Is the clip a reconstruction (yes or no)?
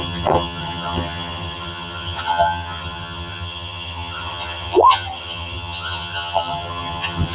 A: yes